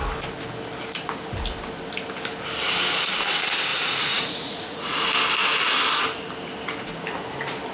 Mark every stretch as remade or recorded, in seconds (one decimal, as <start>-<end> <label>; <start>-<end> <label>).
0.0-3.7 recorded; 3.7-5.1 remade; 5.1-7.7 recorded